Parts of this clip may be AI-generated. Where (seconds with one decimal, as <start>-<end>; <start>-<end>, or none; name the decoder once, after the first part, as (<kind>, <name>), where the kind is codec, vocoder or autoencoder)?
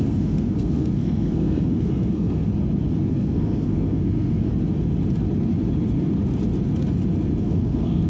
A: 0.0-2.5 (codec, SNAC); 3.1-4.5; 7.4-8.1